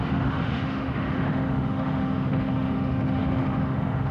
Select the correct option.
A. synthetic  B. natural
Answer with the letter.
A